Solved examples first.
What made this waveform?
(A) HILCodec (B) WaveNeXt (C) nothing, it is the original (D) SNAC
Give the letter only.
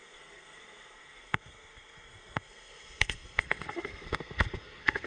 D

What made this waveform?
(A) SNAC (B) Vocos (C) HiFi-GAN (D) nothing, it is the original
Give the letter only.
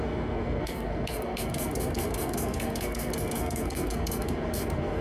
A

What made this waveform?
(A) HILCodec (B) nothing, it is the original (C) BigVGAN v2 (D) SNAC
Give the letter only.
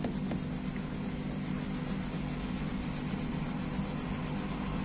B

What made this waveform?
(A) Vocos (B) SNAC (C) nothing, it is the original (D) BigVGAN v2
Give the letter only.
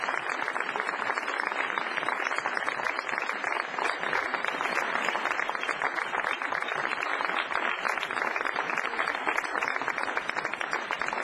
C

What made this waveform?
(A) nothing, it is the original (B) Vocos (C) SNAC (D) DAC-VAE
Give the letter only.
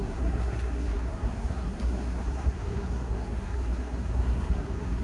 C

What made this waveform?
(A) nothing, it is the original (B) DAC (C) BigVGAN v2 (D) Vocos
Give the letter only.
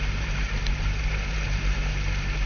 C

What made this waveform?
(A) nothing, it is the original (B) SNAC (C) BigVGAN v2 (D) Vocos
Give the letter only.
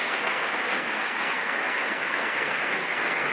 B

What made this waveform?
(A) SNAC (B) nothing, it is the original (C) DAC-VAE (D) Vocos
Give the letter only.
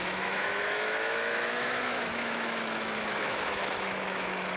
C